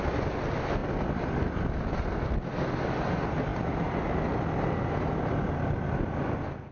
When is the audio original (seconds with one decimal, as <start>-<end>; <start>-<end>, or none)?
0.0-6.7